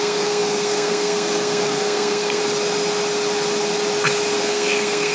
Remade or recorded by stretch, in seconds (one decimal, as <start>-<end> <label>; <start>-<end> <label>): 0.0-2.4 remade; 2.4-4.4 recorded; 4.4-5.1 remade